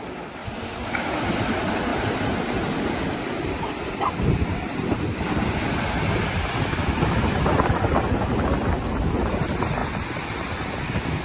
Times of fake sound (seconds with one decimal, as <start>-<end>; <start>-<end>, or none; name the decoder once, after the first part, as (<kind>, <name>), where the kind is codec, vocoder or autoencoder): none